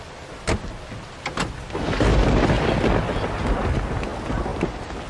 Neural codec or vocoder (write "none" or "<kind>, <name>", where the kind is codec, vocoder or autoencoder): none